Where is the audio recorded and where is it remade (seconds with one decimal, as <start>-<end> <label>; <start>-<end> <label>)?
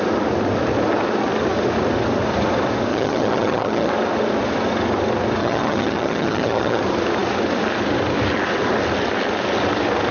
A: 0.0-2.9 recorded; 2.9-3.9 remade; 3.9-5.4 recorded; 5.4-6.8 remade; 6.8-10.1 recorded